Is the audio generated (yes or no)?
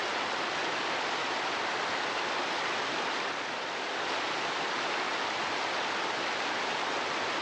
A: no